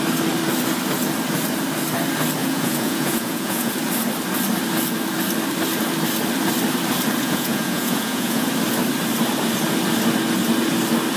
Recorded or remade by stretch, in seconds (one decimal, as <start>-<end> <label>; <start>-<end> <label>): 0.0-2.4 recorded; 2.4-3.7 remade; 3.7-7.2 recorded; 7.2-8.5 remade; 8.5-11.2 recorded